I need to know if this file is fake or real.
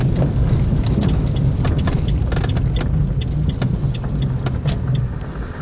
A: real